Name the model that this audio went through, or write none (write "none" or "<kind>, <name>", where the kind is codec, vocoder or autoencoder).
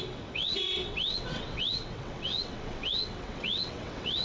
vocoder, WaveNeXt